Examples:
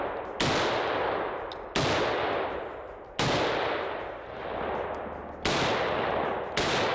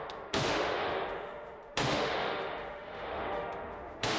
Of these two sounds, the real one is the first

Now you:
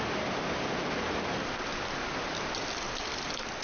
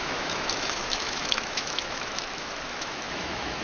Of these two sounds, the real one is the first